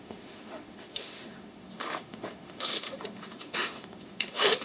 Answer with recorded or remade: remade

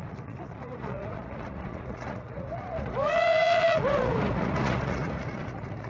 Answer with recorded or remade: remade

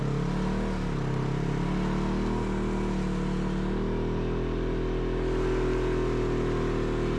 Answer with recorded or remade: recorded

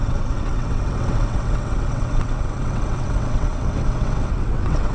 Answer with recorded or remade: remade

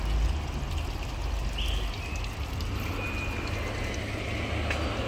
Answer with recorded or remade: recorded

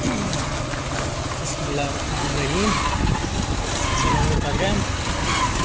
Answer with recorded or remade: recorded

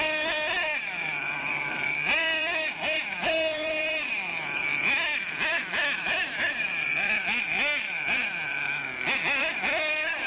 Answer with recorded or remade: remade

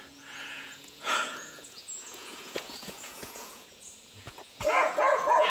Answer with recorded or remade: remade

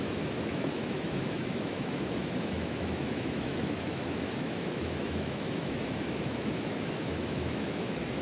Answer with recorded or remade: remade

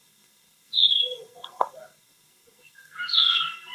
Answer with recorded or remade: remade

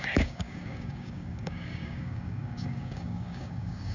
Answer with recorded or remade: remade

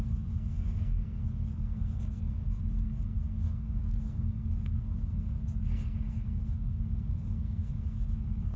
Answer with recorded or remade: remade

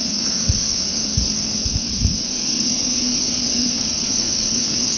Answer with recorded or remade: remade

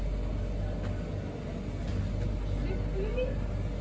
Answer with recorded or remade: recorded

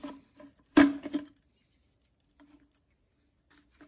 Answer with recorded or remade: recorded